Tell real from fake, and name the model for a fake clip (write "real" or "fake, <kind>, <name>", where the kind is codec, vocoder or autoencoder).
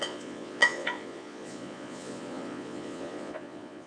fake, vocoder, Vocos